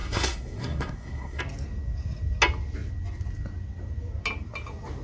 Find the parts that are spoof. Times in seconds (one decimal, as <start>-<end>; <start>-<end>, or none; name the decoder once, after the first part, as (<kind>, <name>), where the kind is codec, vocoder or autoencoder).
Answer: 0.0-1.4 (codec, SNAC)